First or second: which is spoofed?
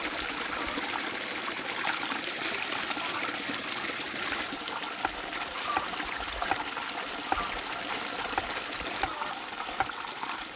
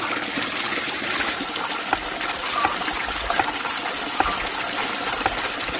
first